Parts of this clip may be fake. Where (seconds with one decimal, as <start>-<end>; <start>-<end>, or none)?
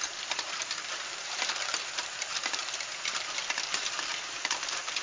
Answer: 0.0-2.6; 3.7-5.0